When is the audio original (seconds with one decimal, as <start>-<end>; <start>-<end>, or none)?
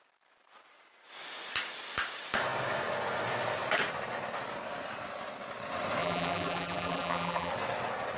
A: 0.0-6.0; 7.5-8.2